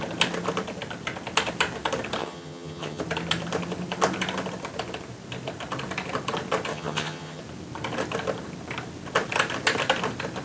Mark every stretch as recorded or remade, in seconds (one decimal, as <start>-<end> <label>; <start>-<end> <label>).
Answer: 0.0-2.2 recorded; 2.2-3.0 remade; 3.0-6.7 recorded; 6.7-7.4 remade; 7.4-10.4 recorded